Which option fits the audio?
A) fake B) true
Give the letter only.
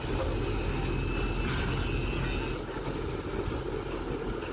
B